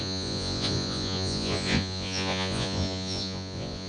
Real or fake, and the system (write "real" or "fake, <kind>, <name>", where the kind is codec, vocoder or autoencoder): fake, vocoder, Vocos